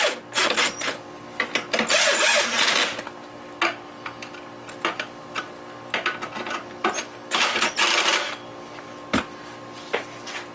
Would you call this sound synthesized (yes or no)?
no